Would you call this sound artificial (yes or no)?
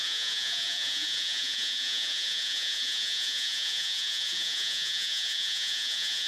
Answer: yes